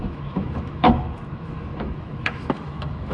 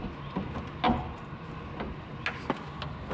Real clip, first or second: second